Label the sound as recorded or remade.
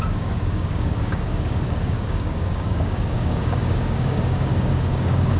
remade